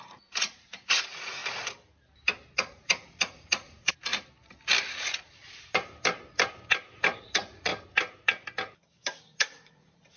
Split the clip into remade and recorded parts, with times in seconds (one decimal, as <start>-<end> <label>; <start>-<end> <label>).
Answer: 0.0-1.4 remade; 1.4-2.5 recorded; 2.5-4.1 remade; 4.1-4.9 recorded; 4.9-5.4 remade; 5.4-7.2 recorded; 7.2-7.7 remade; 7.7-9.2 recorded; 9.2-10.2 remade